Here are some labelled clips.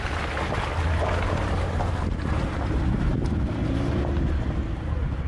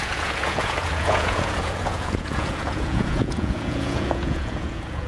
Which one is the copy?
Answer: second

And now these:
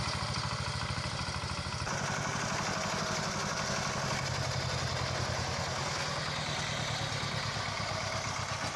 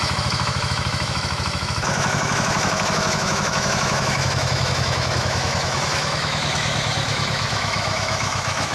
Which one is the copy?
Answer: second